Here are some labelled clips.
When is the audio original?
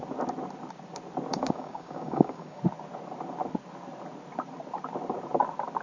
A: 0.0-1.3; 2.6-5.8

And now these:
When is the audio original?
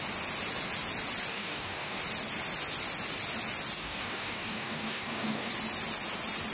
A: 0.0-1.3; 2.0-3.8; 5.5-6.5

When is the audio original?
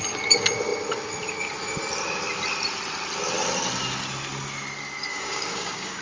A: 0.0-5.1